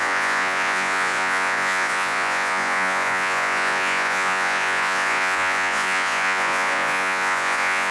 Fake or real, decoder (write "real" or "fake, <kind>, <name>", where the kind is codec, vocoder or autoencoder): fake, vocoder, Vocos